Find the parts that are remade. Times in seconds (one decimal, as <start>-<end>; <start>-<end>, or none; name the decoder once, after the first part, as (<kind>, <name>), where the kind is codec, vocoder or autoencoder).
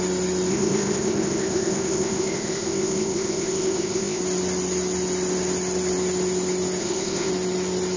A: 0.5-4.2 (codec, ZipCodec); 6.8-7.3